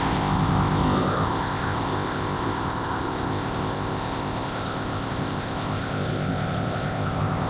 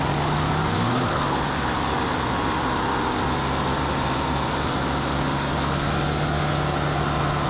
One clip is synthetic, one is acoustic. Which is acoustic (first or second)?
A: second